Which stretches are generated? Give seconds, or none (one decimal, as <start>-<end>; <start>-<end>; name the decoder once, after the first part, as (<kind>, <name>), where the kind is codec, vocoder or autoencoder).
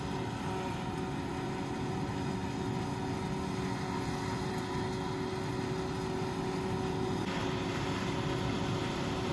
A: none